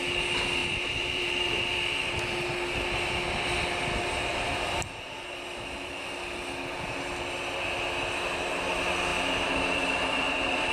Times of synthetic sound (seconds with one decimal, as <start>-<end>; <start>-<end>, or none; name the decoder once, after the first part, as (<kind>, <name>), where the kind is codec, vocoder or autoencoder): 0.6-2.2 (vocoder, BigVGAN v2); 4.3-5.9; 9.1-10.7

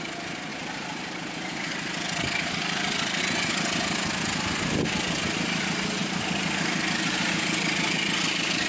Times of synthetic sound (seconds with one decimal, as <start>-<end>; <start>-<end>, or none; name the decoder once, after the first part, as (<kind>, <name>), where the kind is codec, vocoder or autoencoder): 0.5-3.2 (vocoder, BigVGAN v2)

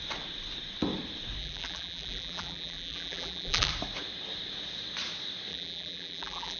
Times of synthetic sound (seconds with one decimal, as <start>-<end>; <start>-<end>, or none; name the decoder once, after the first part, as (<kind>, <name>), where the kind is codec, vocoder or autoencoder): 1.4-3.7 (vocoder, BigVGAN v2); 5.5-6.6

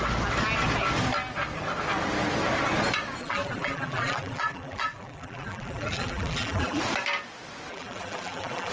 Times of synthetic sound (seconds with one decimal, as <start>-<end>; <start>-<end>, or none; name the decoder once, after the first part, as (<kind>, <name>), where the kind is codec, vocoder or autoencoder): 3.2-6.8 (vocoder, BigVGAN v2); 7.7-8.7

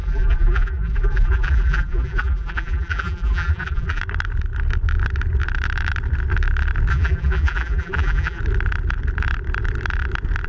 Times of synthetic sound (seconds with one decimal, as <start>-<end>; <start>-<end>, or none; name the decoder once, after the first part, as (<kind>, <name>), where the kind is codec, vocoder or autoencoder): 0.0-4.0 (vocoder, BigVGAN v2); 6.9-8.4